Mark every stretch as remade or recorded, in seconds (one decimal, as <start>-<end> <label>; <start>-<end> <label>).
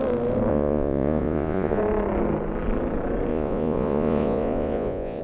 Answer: 0.0-0.5 recorded; 0.5-1.8 remade; 1.8-3.3 recorded; 3.3-5.2 remade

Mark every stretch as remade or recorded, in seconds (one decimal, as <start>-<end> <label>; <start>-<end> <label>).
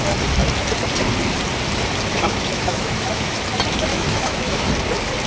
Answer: 0.0-2.1 recorded; 2.1-3.4 remade; 3.4-3.9 recorded; 3.9-4.7 remade; 4.7-5.3 recorded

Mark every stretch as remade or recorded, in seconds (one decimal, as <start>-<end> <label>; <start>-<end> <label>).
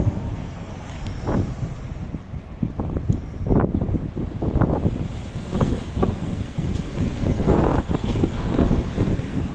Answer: 0.0-0.7 remade; 0.7-5.3 recorded; 5.3-9.5 remade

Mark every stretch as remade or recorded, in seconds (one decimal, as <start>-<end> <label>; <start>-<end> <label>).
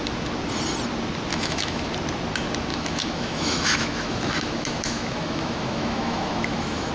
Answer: 0.0-1.3 recorded; 1.3-1.9 remade; 1.9-2.7 recorded; 2.7-6.9 remade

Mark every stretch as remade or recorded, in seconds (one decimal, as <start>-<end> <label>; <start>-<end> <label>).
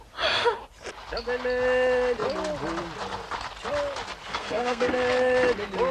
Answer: 0.0-4.3 recorded; 4.3-4.9 remade; 4.9-5.9 recorded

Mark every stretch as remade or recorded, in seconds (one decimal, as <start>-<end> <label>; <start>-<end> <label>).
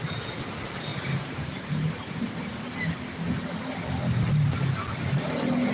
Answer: 0.0-0.9 recorded; 0.9-2.6 remade; 2.6-5.7 recorded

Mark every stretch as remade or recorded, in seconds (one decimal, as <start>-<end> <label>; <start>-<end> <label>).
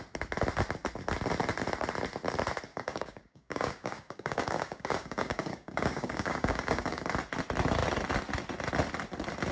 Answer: 0.0-2.7 recorded; 2.7-7.0 remade; 7.0-9.5 recorded